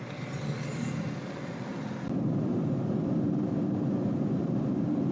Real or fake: fake